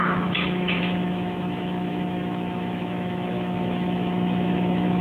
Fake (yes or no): yes